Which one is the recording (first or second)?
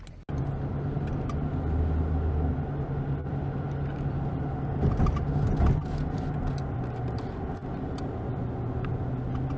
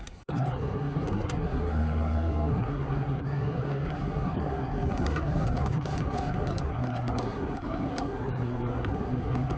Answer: first